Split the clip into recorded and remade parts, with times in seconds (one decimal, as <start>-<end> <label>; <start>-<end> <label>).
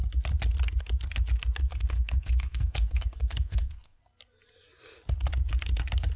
0.0-1.7 recorded; 1.7-4.0 remade; 4.0-6.2 recorded